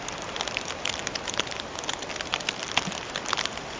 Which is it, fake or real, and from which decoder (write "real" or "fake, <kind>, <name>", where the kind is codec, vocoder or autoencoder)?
real